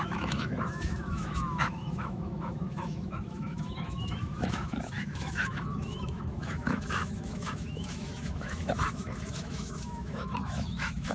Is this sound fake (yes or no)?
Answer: yes